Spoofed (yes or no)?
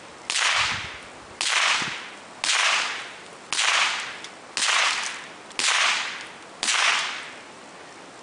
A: no